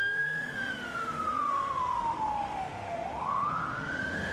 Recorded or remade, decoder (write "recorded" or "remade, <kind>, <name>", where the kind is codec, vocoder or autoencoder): remade, autoencoder, DAC-VAE